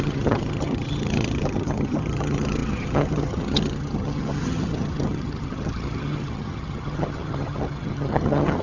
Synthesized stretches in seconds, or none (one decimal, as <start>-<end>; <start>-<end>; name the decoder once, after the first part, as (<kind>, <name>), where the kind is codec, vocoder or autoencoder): 0.0-8.6 (vocoder, HiFi-GAN)

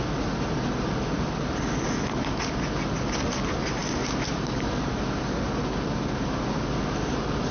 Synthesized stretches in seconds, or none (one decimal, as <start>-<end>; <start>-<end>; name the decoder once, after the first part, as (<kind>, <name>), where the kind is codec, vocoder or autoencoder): none

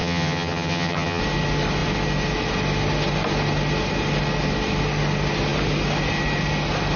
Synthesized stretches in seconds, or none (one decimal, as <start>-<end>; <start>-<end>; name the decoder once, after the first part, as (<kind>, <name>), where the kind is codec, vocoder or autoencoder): 0.0-1.2 (vocoder, HiFi-GAN)

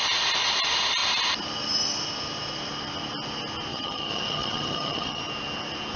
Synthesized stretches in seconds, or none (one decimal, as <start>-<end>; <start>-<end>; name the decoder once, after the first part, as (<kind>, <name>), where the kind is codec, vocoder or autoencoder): 3.7-5.2 (vocoder, HiFi-GAN)

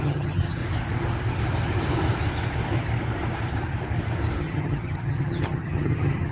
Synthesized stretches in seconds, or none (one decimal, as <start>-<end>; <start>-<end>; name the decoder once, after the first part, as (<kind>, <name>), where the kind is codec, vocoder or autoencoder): 0.0-0.6 (vocoder, HiFi-GAN); 4.4-6.3